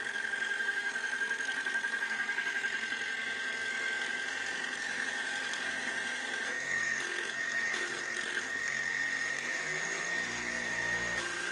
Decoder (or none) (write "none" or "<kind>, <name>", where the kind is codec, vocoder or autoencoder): codec, SNAC